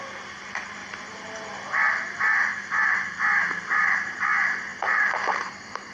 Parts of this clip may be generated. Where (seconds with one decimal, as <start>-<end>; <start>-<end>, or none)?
0.0-0.8; 1.9-2.6; 3.8-5.9